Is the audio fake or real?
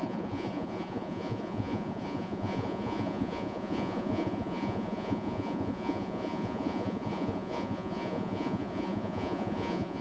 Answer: fake